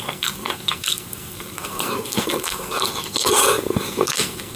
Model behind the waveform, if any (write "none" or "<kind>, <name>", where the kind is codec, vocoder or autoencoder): codec, SNAC